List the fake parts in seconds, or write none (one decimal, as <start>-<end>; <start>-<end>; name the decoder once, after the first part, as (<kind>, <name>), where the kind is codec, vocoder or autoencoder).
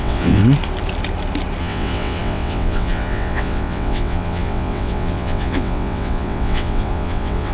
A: 0.0-0.4 (vocoder, WaveNeXt); 1.6-7.5